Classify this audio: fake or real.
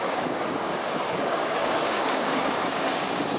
fake